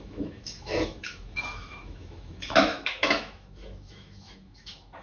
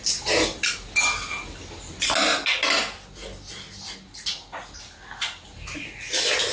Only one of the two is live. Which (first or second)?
second